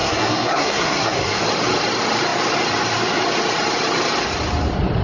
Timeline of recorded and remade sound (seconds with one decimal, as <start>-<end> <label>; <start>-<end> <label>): 0.0-1.4 remade; 1.4-5.0 recorded